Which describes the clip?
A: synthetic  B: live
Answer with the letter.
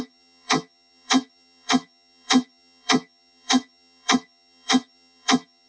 A